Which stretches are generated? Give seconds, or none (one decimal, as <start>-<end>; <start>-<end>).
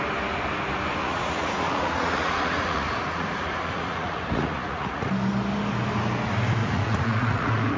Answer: 1.0-5.1; 6.6-7.8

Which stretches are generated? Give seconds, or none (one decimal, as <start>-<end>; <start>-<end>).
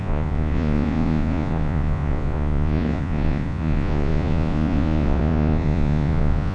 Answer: 0.0-6.5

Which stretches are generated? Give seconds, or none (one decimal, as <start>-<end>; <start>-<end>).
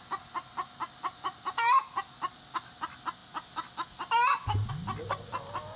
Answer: none